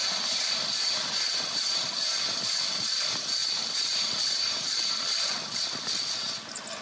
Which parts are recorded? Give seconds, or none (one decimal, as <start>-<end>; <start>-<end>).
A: 2.4-3.4; 5.9-6.8